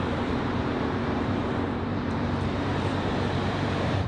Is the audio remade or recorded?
remade